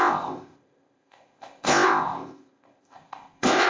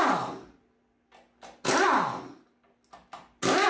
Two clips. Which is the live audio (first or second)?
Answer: second